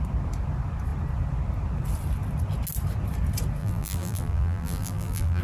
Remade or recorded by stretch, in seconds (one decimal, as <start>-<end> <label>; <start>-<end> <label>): 0.0-3.6 recorded; 3.6-5.4 remade